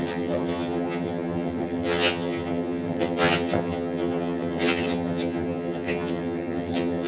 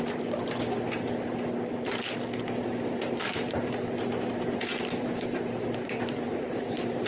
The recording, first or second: second